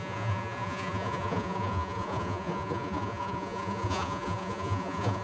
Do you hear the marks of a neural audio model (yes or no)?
yes